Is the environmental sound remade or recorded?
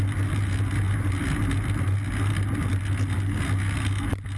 recorded